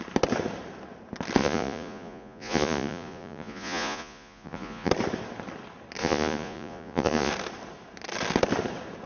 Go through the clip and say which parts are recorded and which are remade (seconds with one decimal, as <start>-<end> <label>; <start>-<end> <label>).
0.0-1.4 recorded; 1.4-4.9 remade; 4.9-6.0 recorded; 6.0-7.3 remade; 7.3-9.1 recorded